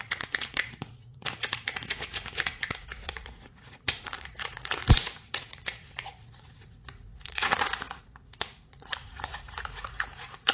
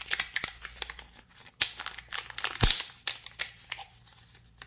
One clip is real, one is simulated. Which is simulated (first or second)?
first